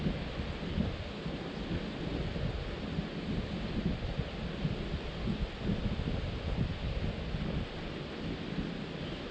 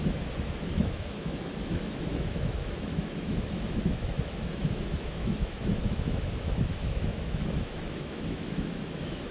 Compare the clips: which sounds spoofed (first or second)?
second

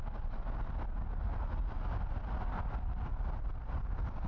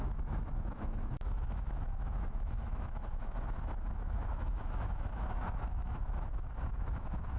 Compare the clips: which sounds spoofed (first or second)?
second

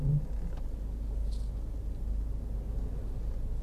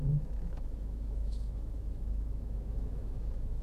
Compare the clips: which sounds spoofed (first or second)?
second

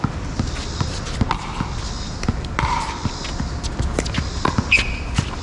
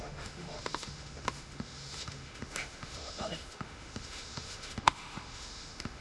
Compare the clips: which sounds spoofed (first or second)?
second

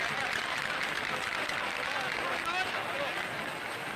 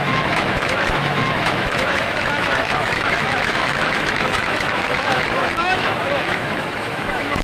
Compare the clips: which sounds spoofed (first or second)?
second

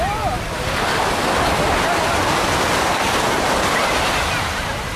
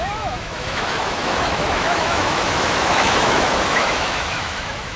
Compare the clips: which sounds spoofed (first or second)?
second